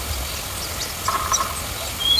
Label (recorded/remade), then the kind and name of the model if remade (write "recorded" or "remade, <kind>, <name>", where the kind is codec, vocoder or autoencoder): recorded